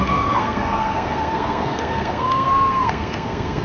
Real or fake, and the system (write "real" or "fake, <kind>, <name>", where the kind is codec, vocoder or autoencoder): fake, codec, SNAC